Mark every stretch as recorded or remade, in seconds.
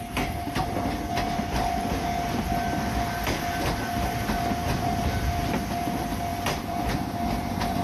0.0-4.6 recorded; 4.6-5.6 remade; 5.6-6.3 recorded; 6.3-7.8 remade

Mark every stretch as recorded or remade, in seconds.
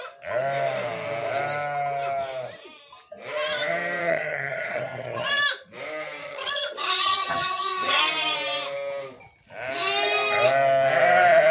0.0-4.0 recorded; 4.0-5.3 remade; 5.3-6.2 recorded; 6.2-8.0 remade; 8.0-11.5 recorded